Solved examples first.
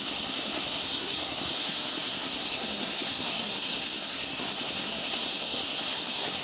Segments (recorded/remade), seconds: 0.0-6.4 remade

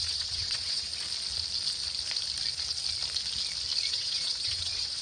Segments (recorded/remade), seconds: 0.0-0.9 remade; 0.9-3.9 recorded; 3.9-5.0 remade

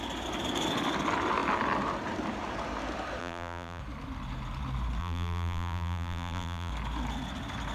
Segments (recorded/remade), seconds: 0.0-3.2 recorded; 3.2-3.8 remade; 3.8-5.0 recorded; 5.0-6.7 remade; 6.7-7.7 recorded

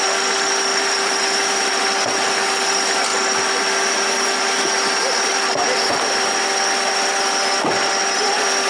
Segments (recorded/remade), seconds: 0.0-0.7 recorded; 0.7-1.8 remade; 1.8-8.7 recorded